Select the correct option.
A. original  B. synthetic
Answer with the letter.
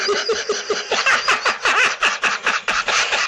B